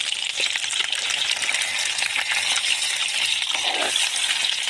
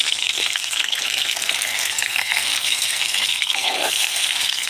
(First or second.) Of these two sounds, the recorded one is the first